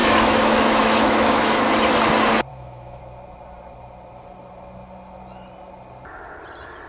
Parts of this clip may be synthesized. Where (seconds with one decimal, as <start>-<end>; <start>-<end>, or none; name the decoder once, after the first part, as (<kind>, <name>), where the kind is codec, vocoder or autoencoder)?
0.0-1.5 (autoencoder, DAC-VAE); 2.5-3.0